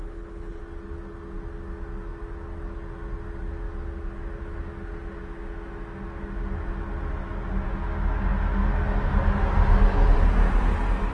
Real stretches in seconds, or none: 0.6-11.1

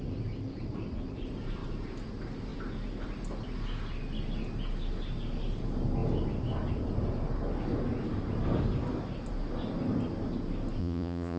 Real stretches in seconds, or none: 0.0-10.8

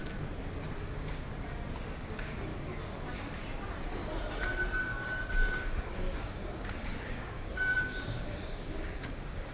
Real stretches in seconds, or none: 0.0-0.8; 1.3-2.1; 2.5-4.8

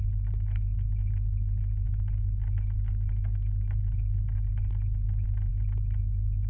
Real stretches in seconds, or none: 0.0-6.5